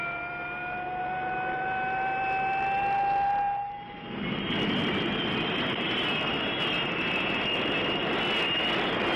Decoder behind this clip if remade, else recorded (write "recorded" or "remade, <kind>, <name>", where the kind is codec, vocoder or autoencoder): recorded